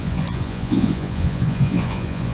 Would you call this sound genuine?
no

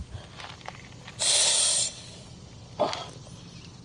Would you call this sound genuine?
yes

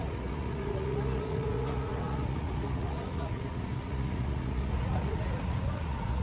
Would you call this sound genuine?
no